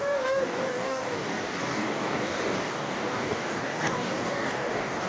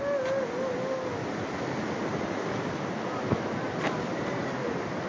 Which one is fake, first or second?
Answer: first